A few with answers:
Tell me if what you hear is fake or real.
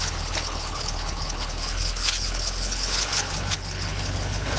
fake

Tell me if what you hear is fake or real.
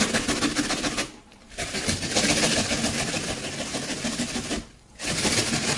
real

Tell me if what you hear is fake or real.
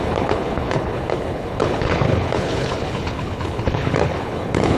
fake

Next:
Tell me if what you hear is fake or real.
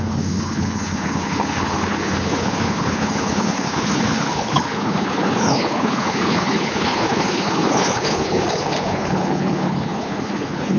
fake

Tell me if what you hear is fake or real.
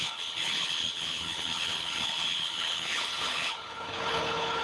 fake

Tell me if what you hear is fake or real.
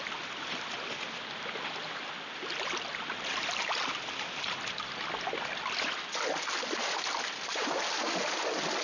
real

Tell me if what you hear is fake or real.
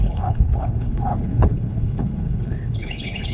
fake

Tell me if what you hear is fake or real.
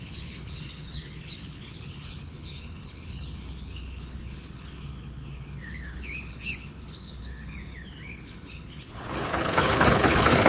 fake